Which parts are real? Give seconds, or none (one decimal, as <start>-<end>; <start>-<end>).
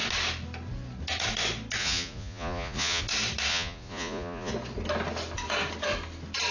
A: 0.0-1.8; 3.0-3.5; 4.5-6.5